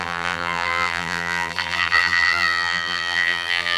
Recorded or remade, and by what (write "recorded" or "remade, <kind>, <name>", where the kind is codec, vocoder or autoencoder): remade, vocoder, BigVGAN v2